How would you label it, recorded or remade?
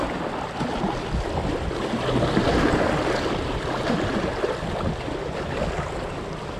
recorded